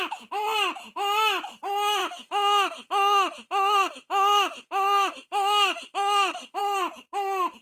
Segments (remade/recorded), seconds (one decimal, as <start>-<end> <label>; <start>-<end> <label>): 0.0-2.0 recorded; 2.0-6.6 remade; 6.6-7.6 recorded